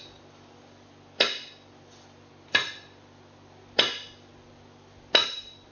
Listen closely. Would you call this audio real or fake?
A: real